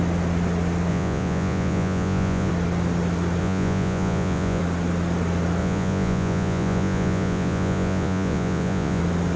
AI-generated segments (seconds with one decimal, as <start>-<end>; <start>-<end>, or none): 0.9-2.5; 3.4-4.6; 5.6-9.0